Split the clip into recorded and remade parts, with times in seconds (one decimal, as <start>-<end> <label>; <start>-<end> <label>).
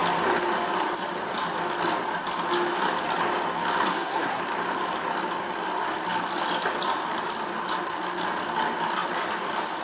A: 0.0-3.9 recorded; 3.9-4.4 remade; 4.4-9.8 recorded